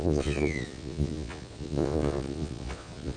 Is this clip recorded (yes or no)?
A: no